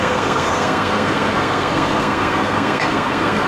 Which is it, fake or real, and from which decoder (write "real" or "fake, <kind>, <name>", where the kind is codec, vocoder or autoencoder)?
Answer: fake, codec, SNAC